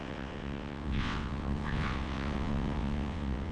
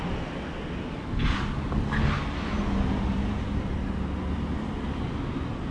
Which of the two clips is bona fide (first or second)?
second